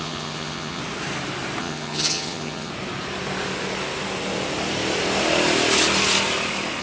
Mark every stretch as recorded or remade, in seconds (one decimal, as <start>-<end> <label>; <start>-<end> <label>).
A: 0.0-0.8 remade; 0.8-1.6 recorded; 1.6-2.7 remade; 2.7-6.8 recorded